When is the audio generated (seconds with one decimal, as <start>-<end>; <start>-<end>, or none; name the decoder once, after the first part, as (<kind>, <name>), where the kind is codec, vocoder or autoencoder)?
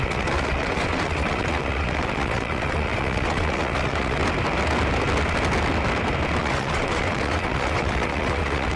0.0-4.2 (vocoder, WaveNeXt); 6.4-8.8